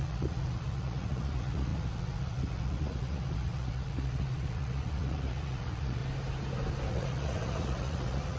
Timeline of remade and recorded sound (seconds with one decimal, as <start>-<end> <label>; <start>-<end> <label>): 0.0-6.0 remade; 6.0-6.9 recorded; 6.9-8.4 remade